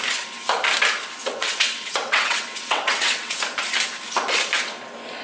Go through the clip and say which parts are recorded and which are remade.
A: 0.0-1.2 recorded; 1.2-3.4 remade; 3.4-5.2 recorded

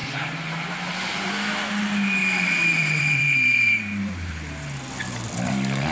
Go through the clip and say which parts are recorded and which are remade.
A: 0.0-1.3 remade; 1.3-2.2 recorded; 2.2-4.3 remade; 4.3-5.9 recorded

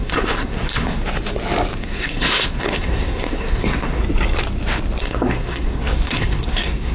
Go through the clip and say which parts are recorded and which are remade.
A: 0.0-1.0 remade; 1.0-1.8 recorded; 1.8-4.0 remade; 4.0-5.0 recorded; 5.0-6.9 remade